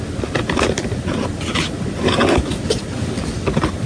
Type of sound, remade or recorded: recorded